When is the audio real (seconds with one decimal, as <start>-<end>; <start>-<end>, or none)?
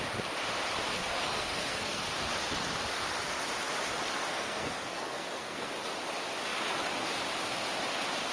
0.0-0.9; 2.0-4.3; 5.7-8.3